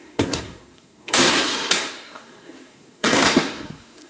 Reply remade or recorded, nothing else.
remade